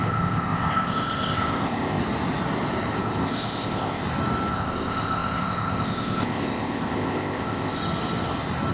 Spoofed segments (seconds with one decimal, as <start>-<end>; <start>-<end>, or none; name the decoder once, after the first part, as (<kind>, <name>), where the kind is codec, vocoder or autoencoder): 0.0-2.0 (codec, ZipCodec); 3.0-4.0; 4.5-7.8